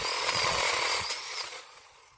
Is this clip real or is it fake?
fake